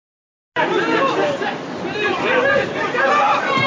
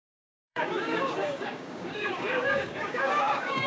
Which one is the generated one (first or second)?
second